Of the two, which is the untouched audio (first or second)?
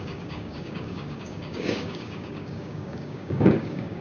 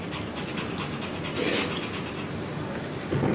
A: second